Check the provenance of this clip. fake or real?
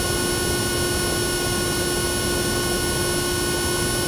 real